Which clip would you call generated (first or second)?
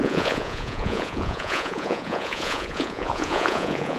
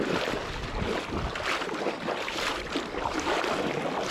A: first